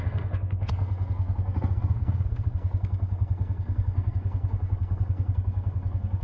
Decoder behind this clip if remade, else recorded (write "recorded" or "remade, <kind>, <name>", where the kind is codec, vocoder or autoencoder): remade, codec, SNAC